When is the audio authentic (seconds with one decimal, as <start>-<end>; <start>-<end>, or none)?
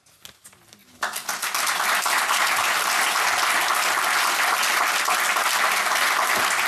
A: 0.0-0.8; 1.7-6.7